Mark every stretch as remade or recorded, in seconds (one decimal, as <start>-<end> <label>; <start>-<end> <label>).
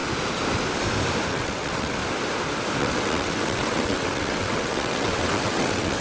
0.0-1.3 recorded; 1.3-2.0 remade; 2.0-2.8 recorded; 2.8-6.0 remade